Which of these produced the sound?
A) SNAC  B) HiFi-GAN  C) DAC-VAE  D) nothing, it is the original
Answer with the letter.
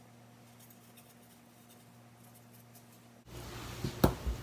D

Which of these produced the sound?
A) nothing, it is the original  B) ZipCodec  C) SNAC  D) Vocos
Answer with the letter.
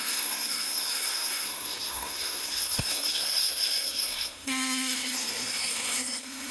C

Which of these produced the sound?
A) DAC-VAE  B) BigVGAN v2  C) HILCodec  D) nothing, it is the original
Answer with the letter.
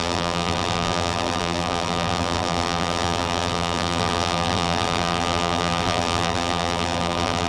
B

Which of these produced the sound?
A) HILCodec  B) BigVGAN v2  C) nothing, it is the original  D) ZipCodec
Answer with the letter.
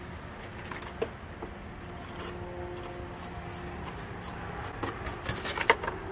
C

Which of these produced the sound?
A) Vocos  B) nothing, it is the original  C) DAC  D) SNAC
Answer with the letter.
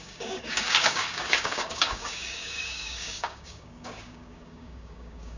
C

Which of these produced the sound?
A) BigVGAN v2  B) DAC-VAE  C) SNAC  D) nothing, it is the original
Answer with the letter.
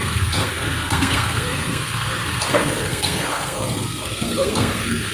C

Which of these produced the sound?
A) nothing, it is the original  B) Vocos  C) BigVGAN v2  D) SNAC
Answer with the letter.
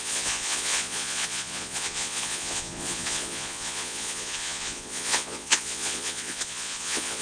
B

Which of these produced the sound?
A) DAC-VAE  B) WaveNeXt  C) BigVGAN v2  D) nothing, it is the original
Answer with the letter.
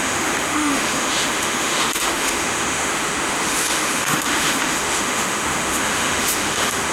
A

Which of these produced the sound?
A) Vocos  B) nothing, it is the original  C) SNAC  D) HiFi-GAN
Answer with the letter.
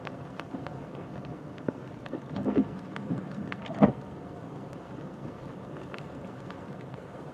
C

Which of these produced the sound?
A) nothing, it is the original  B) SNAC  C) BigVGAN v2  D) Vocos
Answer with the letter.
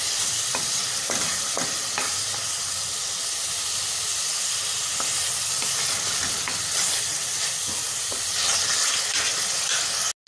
A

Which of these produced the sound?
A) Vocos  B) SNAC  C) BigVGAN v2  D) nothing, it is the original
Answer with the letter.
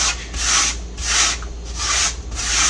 D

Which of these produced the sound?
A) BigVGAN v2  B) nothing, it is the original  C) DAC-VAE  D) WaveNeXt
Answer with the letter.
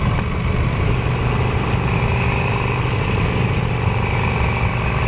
B